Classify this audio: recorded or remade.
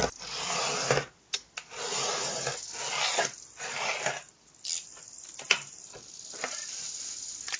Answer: recorded